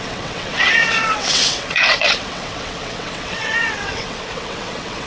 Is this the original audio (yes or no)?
no